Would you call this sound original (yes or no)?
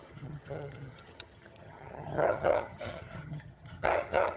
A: no